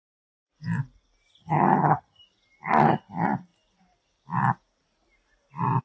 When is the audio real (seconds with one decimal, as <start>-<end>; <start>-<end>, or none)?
0.0-1.4; 2.2-5.8